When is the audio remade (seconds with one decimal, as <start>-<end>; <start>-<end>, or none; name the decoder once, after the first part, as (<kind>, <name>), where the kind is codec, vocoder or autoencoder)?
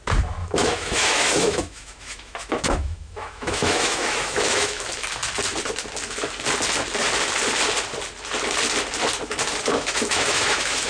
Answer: 0.4-4.8 (autoencoder, DAC-VAE); 9.7-10.9